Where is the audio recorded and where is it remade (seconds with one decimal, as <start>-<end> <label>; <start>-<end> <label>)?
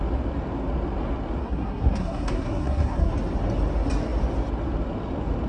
0.0-1.4 recorded; 1.4-3.1 remade; 3.1-5.5 recorded